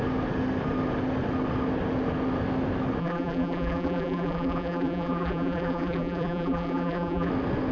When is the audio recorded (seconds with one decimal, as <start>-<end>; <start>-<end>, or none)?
0.0-3.0; 7.3-7.7

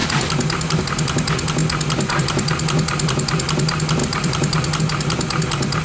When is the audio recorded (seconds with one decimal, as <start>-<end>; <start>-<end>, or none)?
0.8-4.0; 4.8-5.8

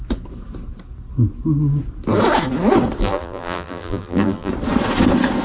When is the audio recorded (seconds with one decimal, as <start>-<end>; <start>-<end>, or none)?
0.0-3.0; 4.5-5.4